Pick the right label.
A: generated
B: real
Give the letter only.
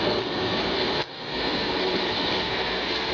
A